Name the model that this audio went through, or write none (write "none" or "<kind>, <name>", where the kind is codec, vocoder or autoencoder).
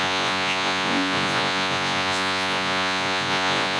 vocoder, Vocos